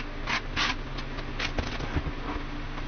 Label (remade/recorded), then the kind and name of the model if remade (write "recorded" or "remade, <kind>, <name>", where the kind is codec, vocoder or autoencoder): recorded